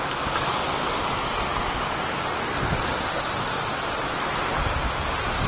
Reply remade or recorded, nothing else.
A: recorded